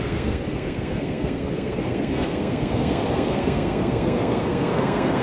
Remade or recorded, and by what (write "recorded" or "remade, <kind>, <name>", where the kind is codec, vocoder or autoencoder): remade, codec, SNAC